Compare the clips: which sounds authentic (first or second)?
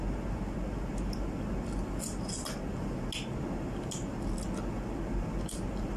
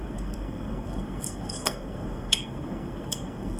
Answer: first